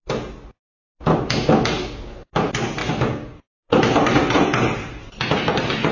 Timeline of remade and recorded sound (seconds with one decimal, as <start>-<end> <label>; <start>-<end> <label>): 0.0-5.9 recorded